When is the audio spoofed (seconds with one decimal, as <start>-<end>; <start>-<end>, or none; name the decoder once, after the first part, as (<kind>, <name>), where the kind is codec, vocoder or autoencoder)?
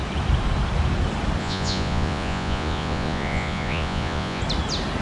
1.4-4.4 (vocoder, Vocos)